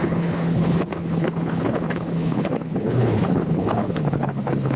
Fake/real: fake